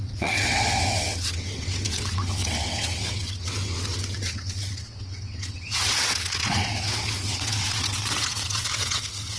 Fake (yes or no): yes